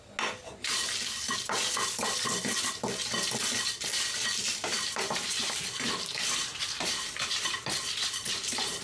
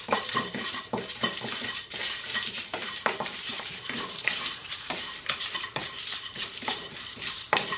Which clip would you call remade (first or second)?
second